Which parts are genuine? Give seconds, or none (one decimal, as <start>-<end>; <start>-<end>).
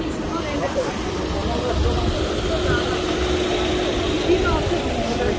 0.0-5.4